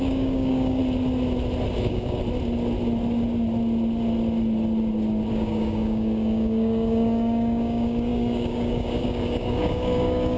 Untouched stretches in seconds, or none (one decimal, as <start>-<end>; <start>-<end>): 0.8-1.8; 2.2-5.3

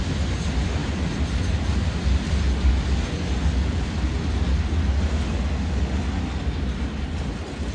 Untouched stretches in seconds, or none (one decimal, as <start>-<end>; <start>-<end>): 0.0-7.7

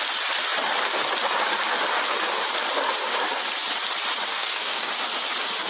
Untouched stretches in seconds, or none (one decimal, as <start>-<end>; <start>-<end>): 0.0-4.3; 4.9-5.7

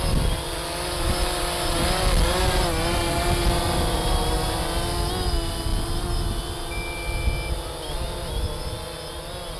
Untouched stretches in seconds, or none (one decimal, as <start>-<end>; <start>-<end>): 0.0-9.6

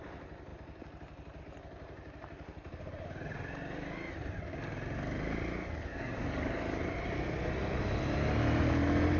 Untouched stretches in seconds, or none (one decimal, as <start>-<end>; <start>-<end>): 0.0-5.9; 6.8-9.2

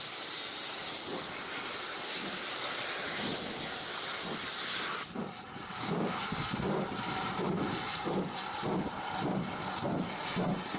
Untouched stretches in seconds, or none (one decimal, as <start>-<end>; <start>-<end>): 0.0-5.7; 6.2-10.8